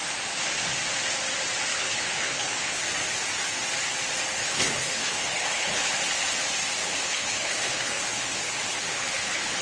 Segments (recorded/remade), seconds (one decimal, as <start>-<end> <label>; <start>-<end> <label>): 0.0-1.7 recorded; 1.7-2.8 remade; 2.8-4.4 recorded; 4.4-5.9 remade; 5.9-6.8 recorded; 6.8-9.6 remade